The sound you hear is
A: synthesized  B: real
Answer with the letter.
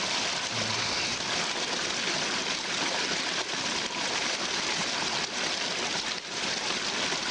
B